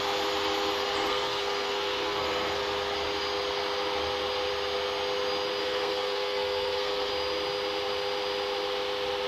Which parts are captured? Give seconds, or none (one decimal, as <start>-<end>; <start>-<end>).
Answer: 0.0-1.1; 2.6-5.6; 7.1-9.3